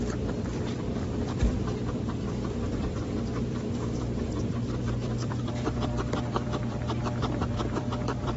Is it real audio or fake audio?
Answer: fake